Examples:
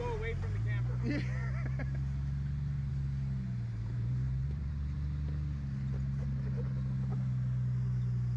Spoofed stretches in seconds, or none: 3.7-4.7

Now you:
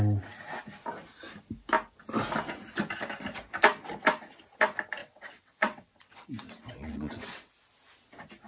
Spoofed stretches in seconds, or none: 5.0-7.5

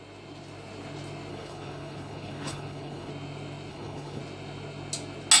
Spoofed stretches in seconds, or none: 1.3-3.1; 3.7-4.2

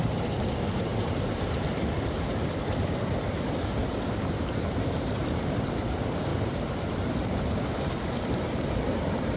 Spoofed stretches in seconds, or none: 0.0-9.4

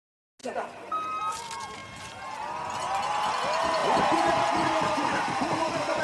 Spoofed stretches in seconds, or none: 0.4-1.2; 3.8-6.0

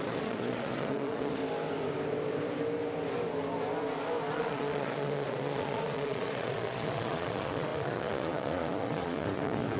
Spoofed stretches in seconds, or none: 0.0-1.4; 4.3-9.8

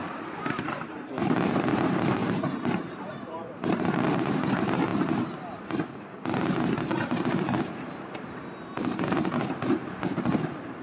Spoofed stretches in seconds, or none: 0.0-2.2; 3.3-4.9; 7.6-10.8